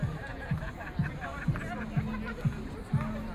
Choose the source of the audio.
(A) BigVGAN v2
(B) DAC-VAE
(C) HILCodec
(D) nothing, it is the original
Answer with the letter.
D